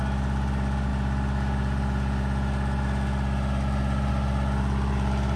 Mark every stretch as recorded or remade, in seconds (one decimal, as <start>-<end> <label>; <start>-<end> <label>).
0.0-0.9 remade; 0.9-4.1 recorded; 4.1-5.4 remade